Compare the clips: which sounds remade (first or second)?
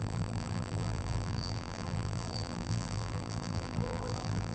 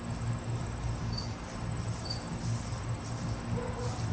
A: first